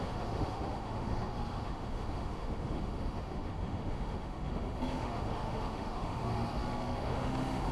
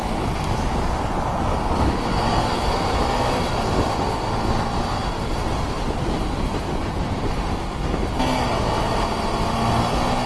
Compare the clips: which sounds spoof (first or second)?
first